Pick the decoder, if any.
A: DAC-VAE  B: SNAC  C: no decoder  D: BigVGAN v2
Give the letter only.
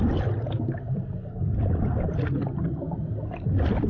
C